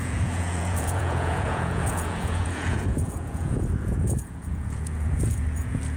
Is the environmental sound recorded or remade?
remade